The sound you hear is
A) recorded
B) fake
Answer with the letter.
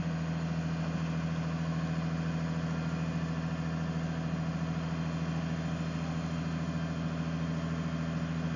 A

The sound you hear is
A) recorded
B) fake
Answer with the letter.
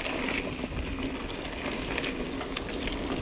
A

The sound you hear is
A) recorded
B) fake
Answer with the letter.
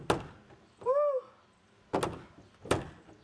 A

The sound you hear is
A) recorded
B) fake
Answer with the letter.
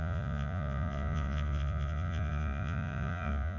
B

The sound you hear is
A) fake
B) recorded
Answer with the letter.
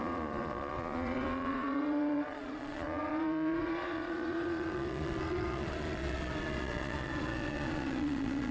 A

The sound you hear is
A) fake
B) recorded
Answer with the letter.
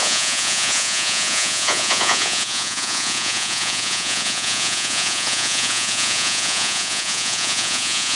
A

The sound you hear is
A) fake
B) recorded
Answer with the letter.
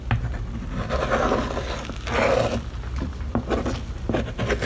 B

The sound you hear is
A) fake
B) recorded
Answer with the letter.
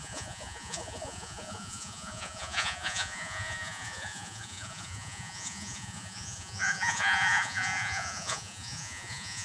A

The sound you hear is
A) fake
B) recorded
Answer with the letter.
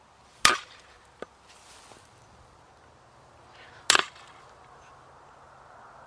B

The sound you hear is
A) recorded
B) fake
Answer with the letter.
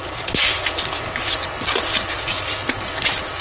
A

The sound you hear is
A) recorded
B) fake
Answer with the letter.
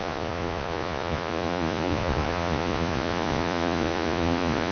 B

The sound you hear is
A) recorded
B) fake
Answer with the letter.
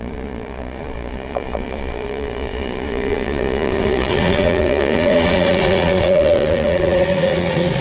B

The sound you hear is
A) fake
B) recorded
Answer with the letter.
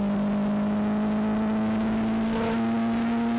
B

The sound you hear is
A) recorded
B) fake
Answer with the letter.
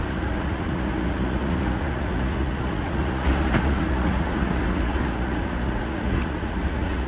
B